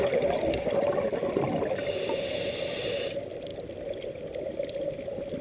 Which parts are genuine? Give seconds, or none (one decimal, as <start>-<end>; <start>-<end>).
0.0-5.4